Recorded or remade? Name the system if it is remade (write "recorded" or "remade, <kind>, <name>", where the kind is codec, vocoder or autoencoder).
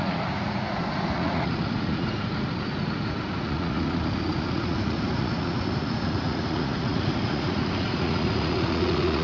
remade, vocoder, Vocos